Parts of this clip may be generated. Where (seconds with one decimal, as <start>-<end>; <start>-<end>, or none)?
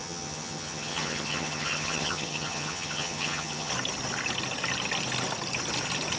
0.0-3.7